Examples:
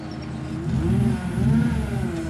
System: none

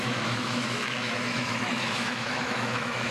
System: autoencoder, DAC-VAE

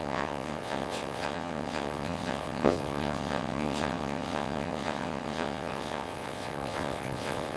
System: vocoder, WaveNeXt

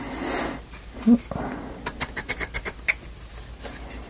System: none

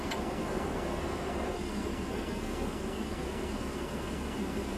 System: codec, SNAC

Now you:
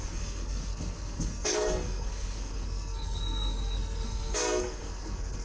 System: codec, SNAC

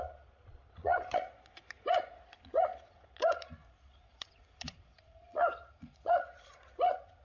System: vocoder, Vocos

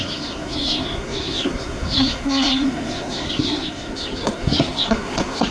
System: codec, SNAC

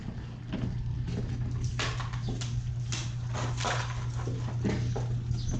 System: none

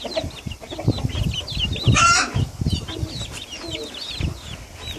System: none